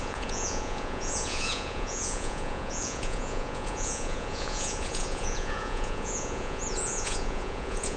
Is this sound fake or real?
fake